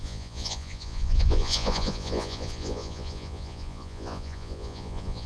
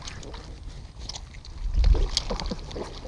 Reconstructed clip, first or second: first